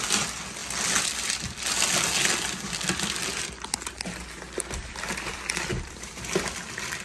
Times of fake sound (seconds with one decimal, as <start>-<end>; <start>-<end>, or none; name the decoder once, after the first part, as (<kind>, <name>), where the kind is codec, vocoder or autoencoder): none